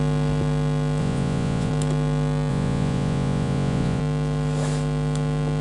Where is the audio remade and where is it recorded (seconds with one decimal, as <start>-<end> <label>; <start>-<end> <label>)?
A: 0.0-1.0 recorded; 1.0-1.7 remade; 1.7-2.5 recorded; 2.5-4.0 remade; 4.0-5.6 recorded